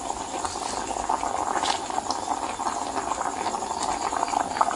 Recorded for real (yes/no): yes